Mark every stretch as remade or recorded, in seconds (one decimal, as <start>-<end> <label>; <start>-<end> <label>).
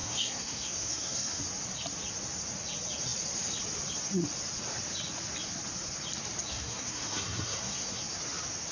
0.0-1.4 remade; 1.4-6.5 recorded; 6.5-8.0 remade; 8.0-8.7 recorded